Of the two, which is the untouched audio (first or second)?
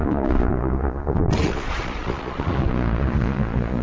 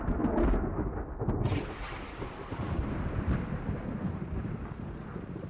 second